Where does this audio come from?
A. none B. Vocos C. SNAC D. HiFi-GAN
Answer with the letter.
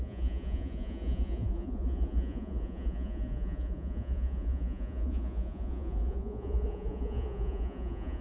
B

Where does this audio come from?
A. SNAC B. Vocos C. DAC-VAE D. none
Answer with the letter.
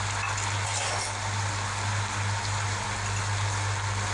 D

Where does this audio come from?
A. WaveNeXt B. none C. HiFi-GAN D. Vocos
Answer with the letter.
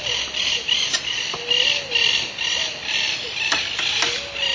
B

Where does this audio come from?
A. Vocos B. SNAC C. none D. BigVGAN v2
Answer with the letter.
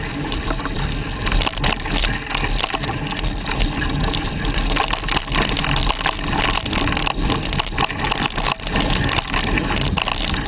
C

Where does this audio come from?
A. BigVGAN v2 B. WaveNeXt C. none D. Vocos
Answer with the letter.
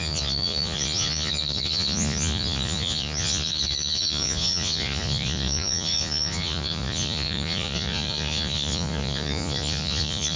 D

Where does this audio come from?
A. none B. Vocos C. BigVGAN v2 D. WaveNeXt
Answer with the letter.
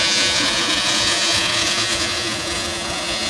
B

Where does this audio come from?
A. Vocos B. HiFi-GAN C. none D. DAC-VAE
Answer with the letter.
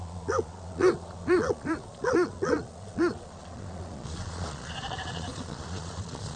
A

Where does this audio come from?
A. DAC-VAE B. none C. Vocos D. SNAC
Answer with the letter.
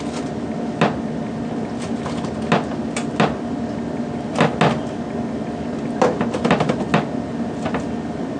B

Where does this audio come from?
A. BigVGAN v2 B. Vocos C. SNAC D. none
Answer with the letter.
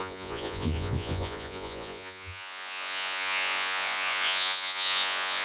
B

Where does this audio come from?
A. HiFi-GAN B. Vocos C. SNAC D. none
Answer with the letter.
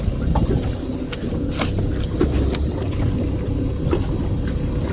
D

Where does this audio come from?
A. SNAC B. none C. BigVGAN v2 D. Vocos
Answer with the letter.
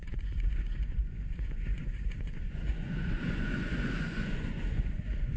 D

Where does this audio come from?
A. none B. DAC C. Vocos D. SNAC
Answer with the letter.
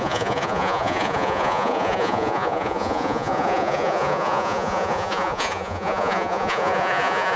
C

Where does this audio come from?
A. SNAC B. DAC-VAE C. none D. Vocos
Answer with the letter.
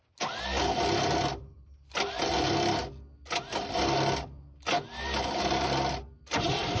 C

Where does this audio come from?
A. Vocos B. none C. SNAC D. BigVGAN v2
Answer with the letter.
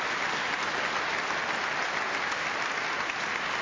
B